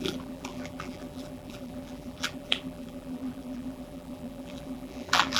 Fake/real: fake